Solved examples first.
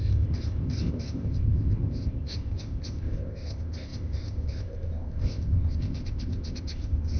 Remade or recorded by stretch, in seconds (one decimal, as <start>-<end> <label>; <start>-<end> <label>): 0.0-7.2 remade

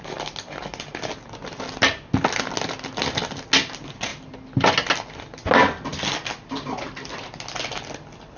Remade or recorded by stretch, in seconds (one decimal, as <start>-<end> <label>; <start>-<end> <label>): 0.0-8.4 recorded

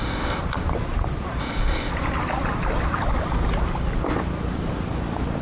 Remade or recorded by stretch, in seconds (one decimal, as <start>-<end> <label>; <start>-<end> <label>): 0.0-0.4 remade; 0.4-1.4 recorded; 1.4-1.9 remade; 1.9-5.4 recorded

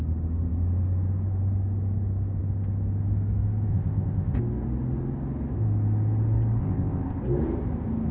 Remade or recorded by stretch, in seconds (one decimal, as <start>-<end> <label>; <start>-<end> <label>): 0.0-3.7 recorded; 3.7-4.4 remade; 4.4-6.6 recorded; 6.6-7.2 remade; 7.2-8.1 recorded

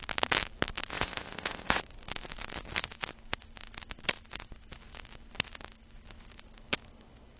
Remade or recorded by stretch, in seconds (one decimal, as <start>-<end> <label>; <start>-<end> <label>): 0.0-0.9 recorded; 0.9-1.8 remade; 1.8-7.4 recorded

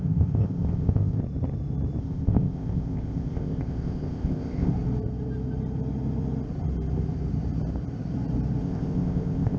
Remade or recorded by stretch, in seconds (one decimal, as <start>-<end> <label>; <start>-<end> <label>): 0.0-1.2 remade; 1.2-2.0 recorded; 2.0-4.7 remade; 4.7-8.6 recorded; 8.6-9.6 remade